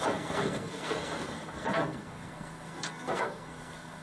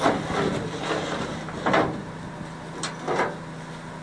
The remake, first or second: first